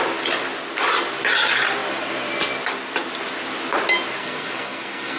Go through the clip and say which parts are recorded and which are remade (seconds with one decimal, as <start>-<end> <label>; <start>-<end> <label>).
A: 0.0-4.2 recorded; 4.2-5.2 remade

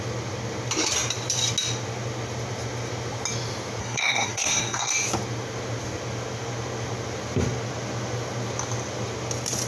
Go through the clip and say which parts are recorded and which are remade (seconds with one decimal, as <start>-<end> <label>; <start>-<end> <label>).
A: 0.0-3.8 recorded; 3.8-4.9 remade; 4.9-9.7 recorded

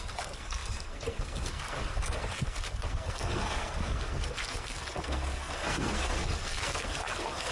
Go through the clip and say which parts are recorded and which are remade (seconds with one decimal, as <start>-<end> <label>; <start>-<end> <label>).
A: 0.0-7.5 remade

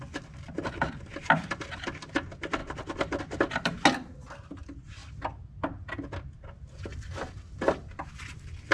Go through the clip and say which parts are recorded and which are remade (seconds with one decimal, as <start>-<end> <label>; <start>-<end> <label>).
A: 0.0-8.7 recorded

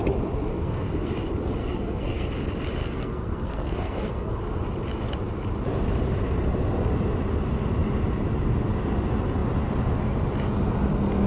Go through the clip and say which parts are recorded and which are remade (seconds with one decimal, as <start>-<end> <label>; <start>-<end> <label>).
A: 0.0-0.5 recorded; 0.5-1.1 remade; 1.1-1.6 recorded; 1.6-2.3 remade; 2.3-2.8 recorded; 2.8-4.3 remade; 4.3-11.3 recorded